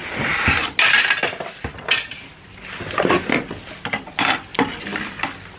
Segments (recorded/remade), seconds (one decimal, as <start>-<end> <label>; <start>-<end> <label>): 0.0-5.6 recorded